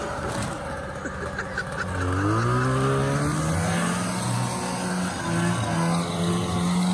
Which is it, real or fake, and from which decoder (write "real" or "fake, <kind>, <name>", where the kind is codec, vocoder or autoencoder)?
real